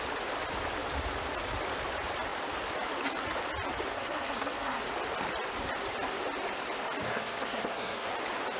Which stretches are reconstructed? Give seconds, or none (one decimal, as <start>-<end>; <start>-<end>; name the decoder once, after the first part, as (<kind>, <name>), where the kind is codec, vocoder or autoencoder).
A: 3.9-4.8 (codec, SNAC); 7.1-8.1